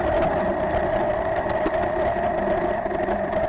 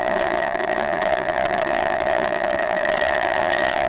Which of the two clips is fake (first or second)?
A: second